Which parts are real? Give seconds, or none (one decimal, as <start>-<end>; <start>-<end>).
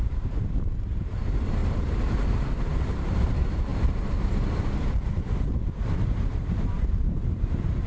1.6-2.6; 3.7-5.8